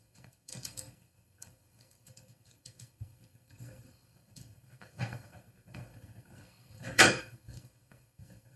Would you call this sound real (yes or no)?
no